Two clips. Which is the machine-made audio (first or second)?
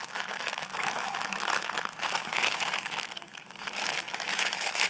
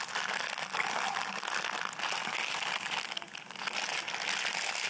first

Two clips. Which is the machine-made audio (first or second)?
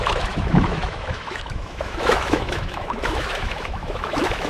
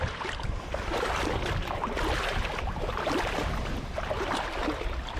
first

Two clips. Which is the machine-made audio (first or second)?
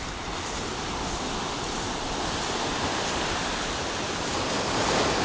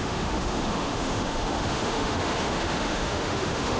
second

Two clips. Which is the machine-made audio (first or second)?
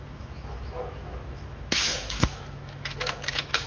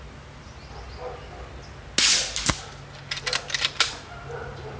first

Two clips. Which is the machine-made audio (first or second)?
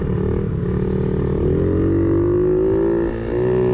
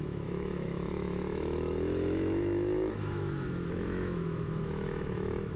second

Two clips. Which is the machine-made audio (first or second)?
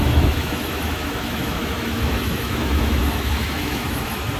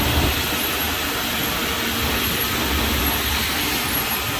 first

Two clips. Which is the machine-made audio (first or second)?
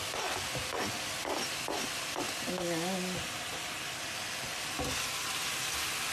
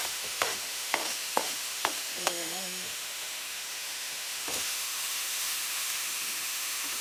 second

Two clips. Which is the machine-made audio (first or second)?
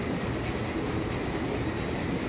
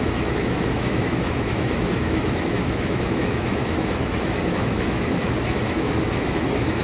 second